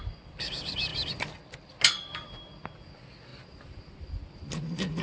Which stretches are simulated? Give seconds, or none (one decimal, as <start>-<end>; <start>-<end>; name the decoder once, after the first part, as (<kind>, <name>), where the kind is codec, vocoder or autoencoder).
none